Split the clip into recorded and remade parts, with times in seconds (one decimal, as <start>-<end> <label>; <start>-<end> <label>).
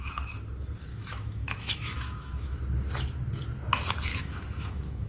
0.0-0.9 recorded; 0.9-2.6 remade; 2.6-4.1 recorded; 4.1-5.1 remade